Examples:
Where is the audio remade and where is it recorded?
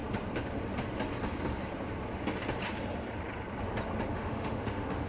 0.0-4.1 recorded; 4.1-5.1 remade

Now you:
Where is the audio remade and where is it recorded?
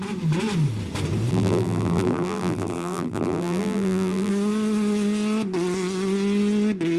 0.0-1.3 recorded; 1.3-4.3 remade; 4.3-7.0 recorded